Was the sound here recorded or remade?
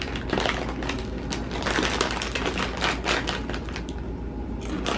recorded